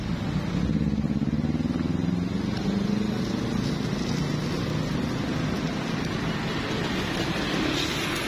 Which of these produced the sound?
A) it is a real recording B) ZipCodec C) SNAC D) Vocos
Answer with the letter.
A